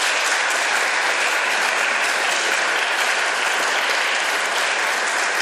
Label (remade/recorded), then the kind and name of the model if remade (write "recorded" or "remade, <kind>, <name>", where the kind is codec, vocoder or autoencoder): recorded